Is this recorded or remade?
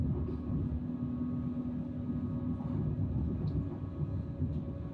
recorded